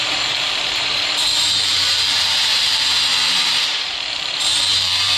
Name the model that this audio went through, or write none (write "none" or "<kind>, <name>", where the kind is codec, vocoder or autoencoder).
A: vocoder, BigVGAN v2